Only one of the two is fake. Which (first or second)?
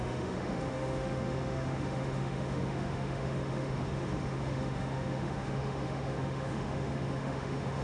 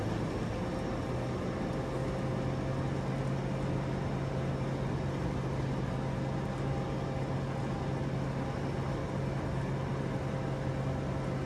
first